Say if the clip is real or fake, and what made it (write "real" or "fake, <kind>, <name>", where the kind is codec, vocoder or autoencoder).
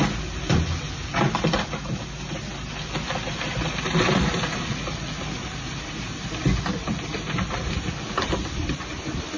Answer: real